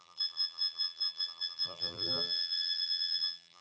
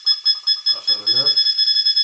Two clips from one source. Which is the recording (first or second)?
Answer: second